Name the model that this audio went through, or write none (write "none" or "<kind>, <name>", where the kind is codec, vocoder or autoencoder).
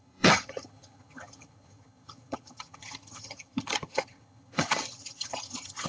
vocoder, HiFi-GAN